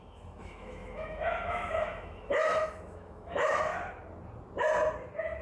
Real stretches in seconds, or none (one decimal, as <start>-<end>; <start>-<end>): 3.7-5.4